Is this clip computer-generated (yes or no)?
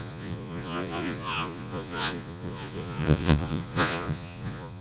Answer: yes